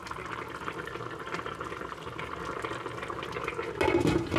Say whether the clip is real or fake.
real